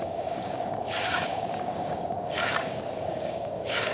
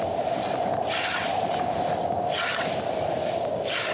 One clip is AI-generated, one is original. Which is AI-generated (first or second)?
first